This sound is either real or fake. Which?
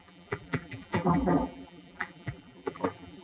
fake